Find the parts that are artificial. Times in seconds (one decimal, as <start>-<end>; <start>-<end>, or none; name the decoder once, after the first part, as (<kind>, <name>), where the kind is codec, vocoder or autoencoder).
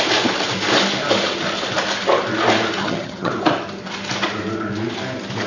2.8-3.3 (vocoder, HiFi-GAN)